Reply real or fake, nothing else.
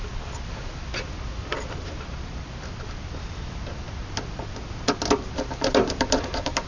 real